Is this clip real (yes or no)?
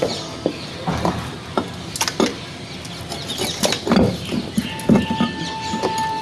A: yes